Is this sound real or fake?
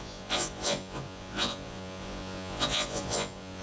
fake